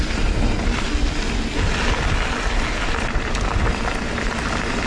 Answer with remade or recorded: recorded